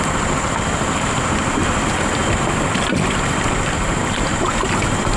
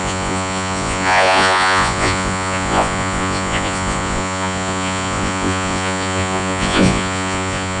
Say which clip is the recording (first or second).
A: first